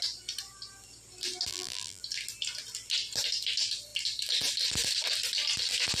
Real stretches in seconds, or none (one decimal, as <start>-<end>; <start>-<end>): 0.0-1.5; 2.0-6.0